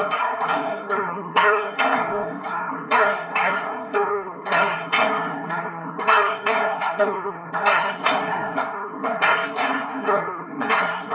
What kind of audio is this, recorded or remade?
remade